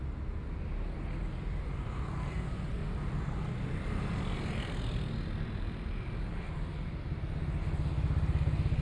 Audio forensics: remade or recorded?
recorded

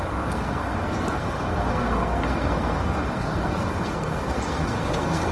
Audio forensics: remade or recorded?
remade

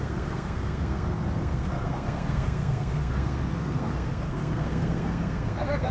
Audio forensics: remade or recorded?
remade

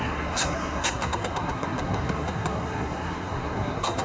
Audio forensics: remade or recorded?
remade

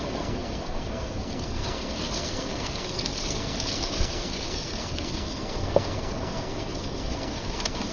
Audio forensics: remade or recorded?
remade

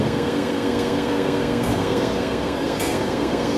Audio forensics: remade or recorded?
remade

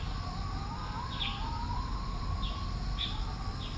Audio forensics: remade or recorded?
recorded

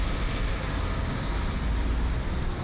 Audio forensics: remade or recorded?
recorded